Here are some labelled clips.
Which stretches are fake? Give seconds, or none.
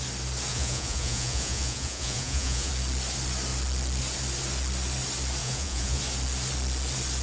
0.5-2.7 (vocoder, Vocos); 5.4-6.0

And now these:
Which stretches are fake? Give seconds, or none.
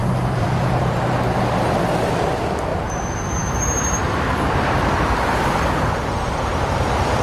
0.0-1.8 (vocoder, BigVGAN v2); 2.7-5.9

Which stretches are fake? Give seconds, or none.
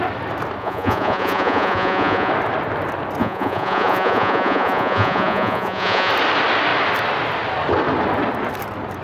0.6-2.3 (vocoder, Vocos); 3.2-6.1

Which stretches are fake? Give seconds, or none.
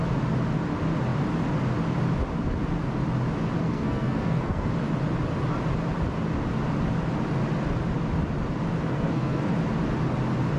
3.6-4.7 (codec, SNAC); 8.9-9.5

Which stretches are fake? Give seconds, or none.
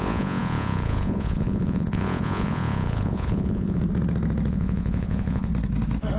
0.0-3.8 (vocoder, Vocos); 4.5-5.5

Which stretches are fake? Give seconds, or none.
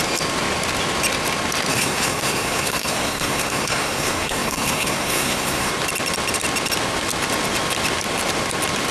1.7-5.7 (codec, SNAC)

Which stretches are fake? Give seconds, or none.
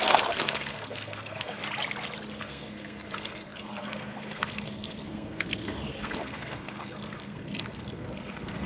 0.0-1.6 (codec, SNAC); 2.4-8.7